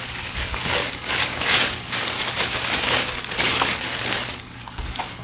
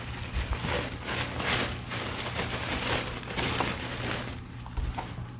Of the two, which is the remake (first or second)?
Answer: first